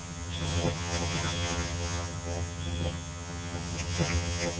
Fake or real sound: fake